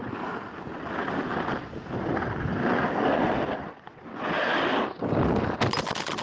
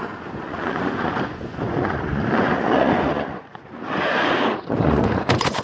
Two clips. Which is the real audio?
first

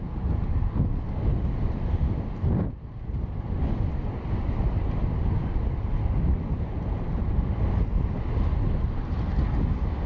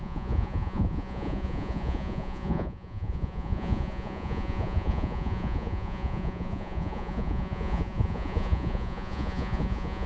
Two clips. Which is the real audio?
first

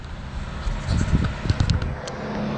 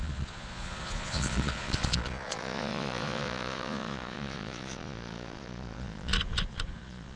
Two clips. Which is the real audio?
first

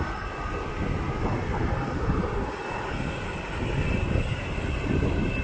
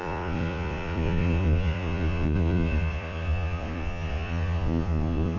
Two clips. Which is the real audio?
first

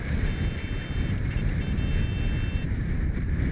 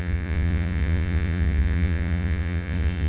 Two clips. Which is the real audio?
first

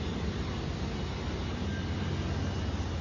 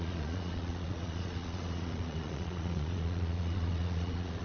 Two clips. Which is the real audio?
first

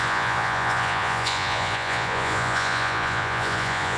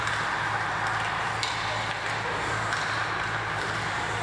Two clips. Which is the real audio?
second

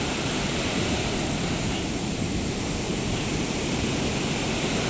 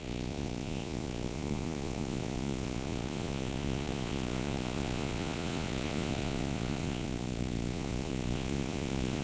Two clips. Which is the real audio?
first